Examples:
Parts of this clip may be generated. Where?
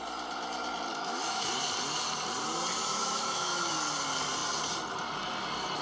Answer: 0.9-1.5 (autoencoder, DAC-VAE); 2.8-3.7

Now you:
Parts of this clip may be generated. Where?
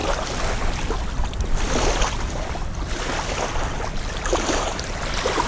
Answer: none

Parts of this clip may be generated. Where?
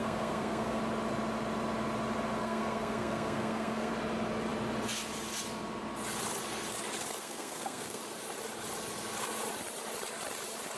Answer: 0.0-0.8 (codec, SNAC); 2.4-3.9; 7.2-8.0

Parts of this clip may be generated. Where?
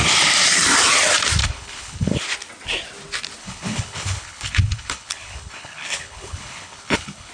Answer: 1.4-2.2 (codec, HILCodec); 3.4-7.3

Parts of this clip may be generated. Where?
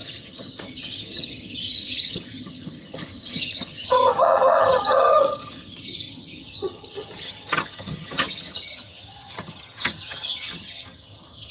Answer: 0.0-11.5 (vocoder, HiFi-GAN)